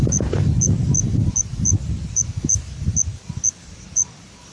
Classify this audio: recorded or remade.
recorded